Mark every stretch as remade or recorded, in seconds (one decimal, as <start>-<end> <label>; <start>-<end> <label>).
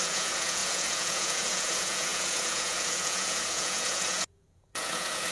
0.0-5.3 remade